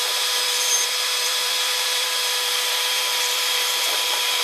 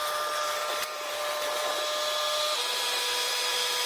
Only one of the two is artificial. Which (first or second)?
first